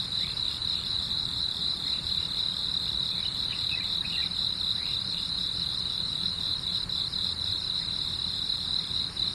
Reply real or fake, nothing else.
fake